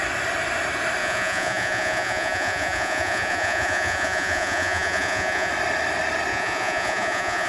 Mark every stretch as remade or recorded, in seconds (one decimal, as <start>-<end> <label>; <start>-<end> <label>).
0.0-1.0 recorded; 1.0-5.5 remade; 5.5-6.3 recorded; 6.3-7.5 remade